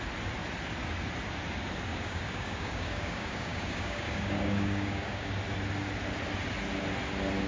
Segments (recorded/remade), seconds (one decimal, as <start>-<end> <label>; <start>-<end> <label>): 0.0-1.9 recorded; 1.9-5.3 remade; 5.3-7.5 recorded

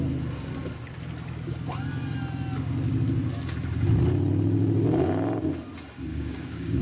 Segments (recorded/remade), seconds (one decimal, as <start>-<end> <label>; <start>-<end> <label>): 0.0-6.1 recorded; 6.1-6.8 remade

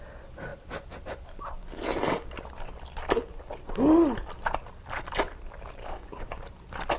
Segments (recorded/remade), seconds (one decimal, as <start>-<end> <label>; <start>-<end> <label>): 0.0-5.8 recorded; 5.8-6.4 remade; 6.4-7.0 recorded

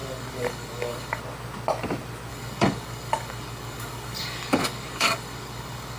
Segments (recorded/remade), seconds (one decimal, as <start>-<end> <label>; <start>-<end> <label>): 0.0-1.2 remade; 1.2-2.3 recorded; 2.3-6.0 remade

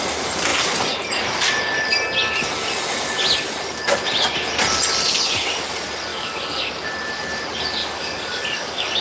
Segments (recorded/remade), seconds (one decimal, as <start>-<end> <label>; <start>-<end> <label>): 0.0-6.1 recorded; 6.1-6.7 remade; 6.7-7.8 recorded; 7.8-9.0 remade

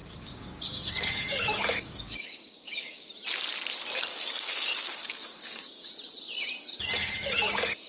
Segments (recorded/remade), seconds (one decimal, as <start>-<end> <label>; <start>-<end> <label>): 0.0-3.1 remade; 3.1-4.1 recorded; 4.1-5.9 remade; 5.9-7.0 recorded; 7.0-7.9 remade